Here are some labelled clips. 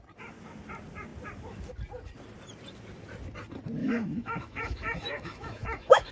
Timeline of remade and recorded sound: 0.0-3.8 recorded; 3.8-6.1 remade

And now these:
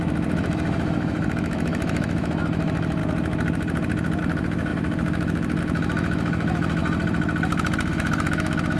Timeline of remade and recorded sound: 0.0-3.0 remade; 3.0-4.2 recorded; 4.2-6.8 remade; 6.8-7.9 recorded; 7.9-8.8 remade